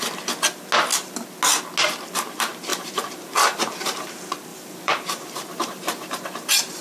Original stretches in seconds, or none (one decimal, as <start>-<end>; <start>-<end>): 0.0-2.7; 4.1-4.5